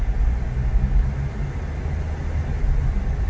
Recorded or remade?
recorded